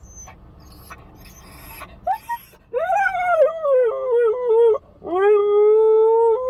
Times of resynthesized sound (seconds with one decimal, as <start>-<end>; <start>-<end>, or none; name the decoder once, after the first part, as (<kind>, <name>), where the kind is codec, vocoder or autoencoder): none